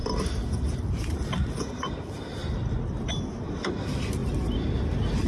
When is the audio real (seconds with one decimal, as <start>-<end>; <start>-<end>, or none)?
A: 0.0-2.4; 3.2-5.3